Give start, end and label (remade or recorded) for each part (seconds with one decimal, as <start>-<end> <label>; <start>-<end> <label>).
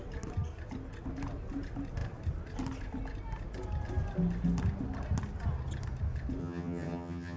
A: 0.0-6.4 recorded; 6.4-7.4 remade